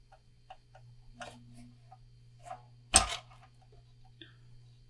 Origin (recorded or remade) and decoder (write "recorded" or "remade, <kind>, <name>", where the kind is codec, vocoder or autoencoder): recorded